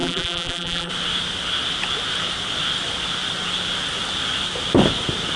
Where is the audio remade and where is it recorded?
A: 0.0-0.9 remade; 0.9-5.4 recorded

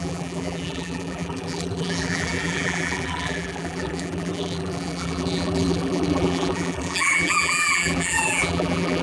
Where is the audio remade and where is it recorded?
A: 0.0-9.0 remade

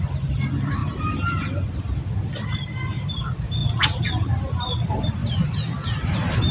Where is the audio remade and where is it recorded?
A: 0.0-0.8 remade; 0.8-2.0 recorded; 2.0-3.6 remade; 3.6-4.1 recorded; 4.1-5.2 remade; 5.2-6.5 recorded

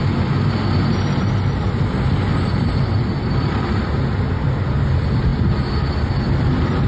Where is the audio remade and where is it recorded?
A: 0.0-2.3 recorded; 2.3-3.8 remade; 3.8-5.3 recorded; 5.3-6.1 remade; 6.1-6.9 recorded